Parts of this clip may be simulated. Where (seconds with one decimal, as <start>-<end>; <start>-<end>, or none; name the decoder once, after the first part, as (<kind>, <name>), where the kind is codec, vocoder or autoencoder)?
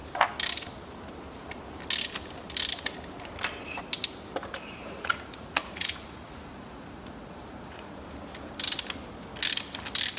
4.8-8.0 (vocoder, Vocos)